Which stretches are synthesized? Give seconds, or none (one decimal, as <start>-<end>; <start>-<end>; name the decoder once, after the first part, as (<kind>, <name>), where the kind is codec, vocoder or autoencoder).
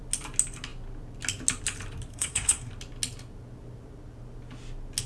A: 2.1-2.7 (codec, SNAC)